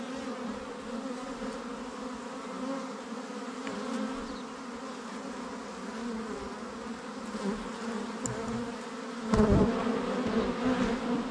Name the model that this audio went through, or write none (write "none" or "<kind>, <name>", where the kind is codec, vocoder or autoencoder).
none